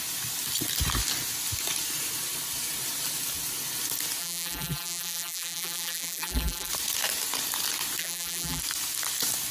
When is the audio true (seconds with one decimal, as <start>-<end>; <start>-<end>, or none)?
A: 0.0-4.2; 6.7-8.0; 8.6-9.5